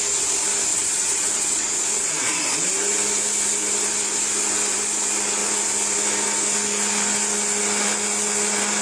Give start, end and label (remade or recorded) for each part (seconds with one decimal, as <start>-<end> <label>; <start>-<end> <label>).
0.0-0.7 recorded; 0.7-2.1 remade; 2.1-8.8 recorded